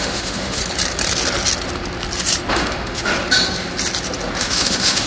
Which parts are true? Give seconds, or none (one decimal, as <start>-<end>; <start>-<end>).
0.6-2.5; 3.1-4.4